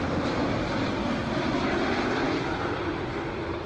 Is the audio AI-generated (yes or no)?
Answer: no